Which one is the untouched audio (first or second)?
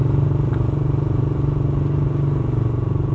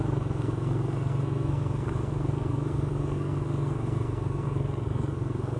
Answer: first